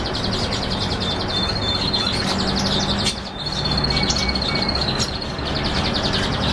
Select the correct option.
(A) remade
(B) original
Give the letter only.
B